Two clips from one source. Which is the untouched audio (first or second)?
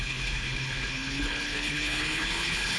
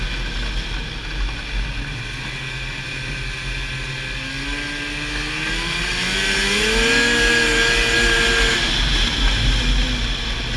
second